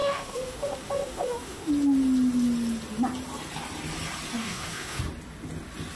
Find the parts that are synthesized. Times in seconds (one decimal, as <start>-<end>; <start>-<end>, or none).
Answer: 0.0-1.7; 4.4-5.0